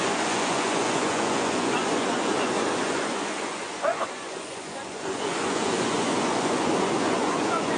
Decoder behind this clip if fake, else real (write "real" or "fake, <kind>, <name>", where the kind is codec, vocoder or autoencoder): fake, vocoder, Vocos